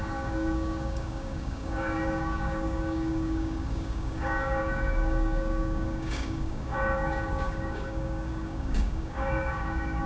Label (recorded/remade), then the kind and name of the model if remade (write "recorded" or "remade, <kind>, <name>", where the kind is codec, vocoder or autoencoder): remade, codec, DAC